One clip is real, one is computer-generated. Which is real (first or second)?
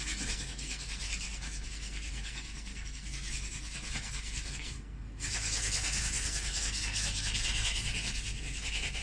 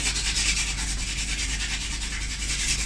second